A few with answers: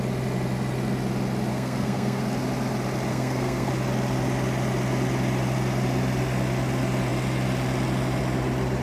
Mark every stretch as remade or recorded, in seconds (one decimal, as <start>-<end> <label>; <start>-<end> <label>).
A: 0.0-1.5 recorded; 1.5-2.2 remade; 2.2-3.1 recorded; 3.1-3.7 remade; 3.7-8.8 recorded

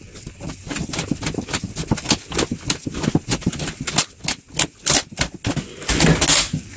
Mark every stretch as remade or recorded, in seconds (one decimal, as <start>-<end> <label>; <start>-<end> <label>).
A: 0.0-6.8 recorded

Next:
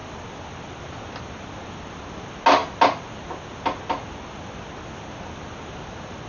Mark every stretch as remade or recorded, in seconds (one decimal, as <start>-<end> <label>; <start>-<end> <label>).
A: 0.0-6.3 recorded

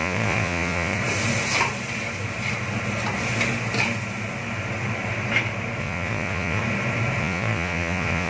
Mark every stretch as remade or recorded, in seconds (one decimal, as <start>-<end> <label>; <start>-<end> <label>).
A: 0.0-1.0 remade; 1.0-5.8 recorded; 5.8-6.6 remade; 6.6-7.2 recorded; 7.2-8.3 remade

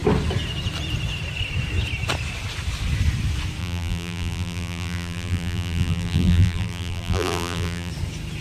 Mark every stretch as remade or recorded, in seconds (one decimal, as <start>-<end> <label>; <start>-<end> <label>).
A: 0.0-3.6 recorded; 3.6-7.9 remade; 7.9-8.4 recorded